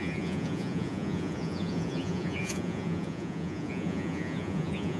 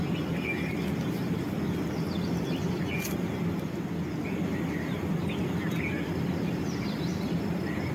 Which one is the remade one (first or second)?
first